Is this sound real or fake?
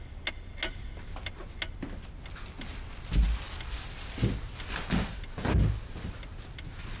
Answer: real